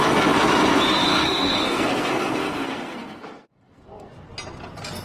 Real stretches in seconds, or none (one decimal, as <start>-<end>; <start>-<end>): 0.0-1.1; 4.1-5.0